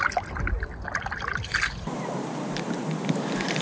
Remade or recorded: recorded